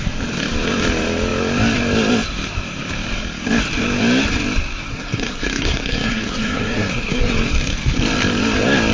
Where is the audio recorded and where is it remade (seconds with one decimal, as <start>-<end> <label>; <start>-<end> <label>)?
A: 0.0-4.9 recorded; 4.9-7.3 remade; 7.3-8.9 recorded